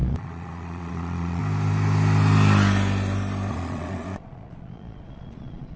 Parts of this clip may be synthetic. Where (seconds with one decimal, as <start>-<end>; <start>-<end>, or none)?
0.0-1.4; 3.5-5.8